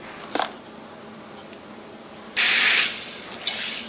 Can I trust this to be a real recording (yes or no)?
yes